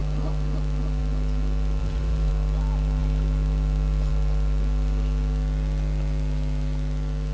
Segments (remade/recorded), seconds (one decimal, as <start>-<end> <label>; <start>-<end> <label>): 0.0-1.8 recorded; 1.8-2.3 remade; 2.3-7.3 recorded